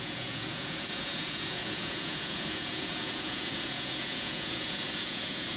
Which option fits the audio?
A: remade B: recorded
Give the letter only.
A